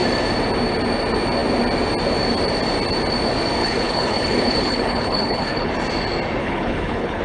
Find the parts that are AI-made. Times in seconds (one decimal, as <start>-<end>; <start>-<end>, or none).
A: 3.6-5.7; 6.4-7.2